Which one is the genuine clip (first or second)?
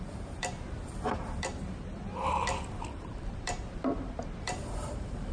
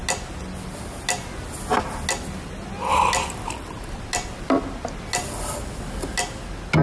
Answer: second